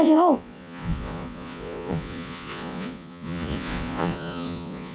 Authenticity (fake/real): fake